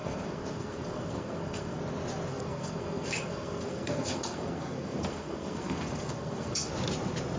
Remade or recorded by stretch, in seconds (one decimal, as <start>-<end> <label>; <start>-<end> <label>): 0.0-1.8 remade; 1.8-2.3 recorded; 2.3-6.7 remade; 6.7-7.4 recorded